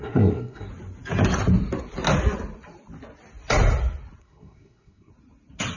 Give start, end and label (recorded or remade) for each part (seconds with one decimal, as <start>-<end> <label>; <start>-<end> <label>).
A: 0.0-0.7 remade; 0.7-4.2 recorded; 4.2-5.1 remade; 5.1-5.8 recorded

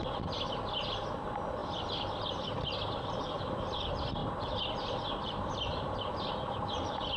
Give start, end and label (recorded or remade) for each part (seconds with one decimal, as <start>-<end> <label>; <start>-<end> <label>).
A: 0.0-7.2 recorded

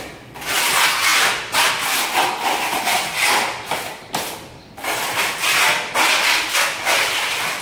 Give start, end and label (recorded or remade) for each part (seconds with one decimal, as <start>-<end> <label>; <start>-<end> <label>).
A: 0.0-7.6 recorded

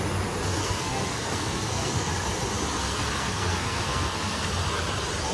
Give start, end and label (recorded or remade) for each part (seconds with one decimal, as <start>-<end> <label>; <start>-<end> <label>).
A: 0.0-0.6 recorded; 0.6-2.1 remade; 2.1-2.8 recorded; 2.8-4.5 remade; 4.5-5.3 recorded

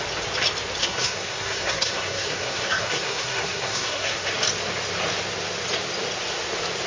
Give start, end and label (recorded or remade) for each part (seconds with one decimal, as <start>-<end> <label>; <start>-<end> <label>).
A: 0.0-0.8 recorded; 0.8-4.3 remade; 4.3-6.9 recorded

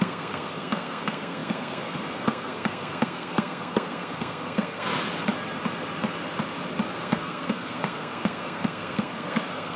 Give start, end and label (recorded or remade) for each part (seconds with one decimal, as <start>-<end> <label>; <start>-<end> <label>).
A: 0.0-4.9 remade; 4.9-7.0 recorded; 7.0-9.8 remade

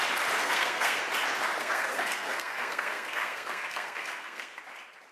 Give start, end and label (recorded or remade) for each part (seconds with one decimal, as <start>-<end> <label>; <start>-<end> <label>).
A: 0.0-0.4 recorded; 0.4-1.0 remade; 1.0-1.6 recorded; 1.6-4.6 remade; 4.6-5.1 recorded